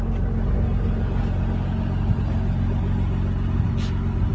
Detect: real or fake real